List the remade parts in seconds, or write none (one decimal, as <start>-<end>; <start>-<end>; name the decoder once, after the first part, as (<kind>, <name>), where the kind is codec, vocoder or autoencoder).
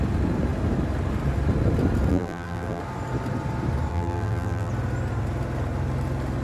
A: 2.1-2.8 (vocoder, BigVGAN v2); 3.9-4.7